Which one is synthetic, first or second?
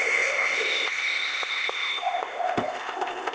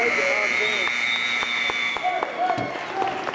first